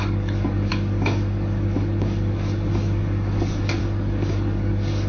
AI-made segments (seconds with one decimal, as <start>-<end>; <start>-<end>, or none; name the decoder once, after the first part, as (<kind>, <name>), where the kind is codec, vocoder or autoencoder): 0.0-5.1 (codec, DAC)